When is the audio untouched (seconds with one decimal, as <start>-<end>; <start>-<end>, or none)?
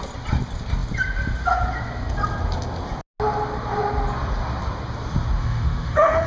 0.0-5.4